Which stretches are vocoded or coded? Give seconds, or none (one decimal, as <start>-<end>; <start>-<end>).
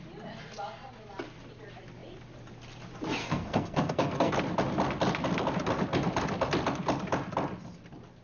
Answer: 3.2-4.3